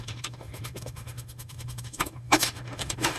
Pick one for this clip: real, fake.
fake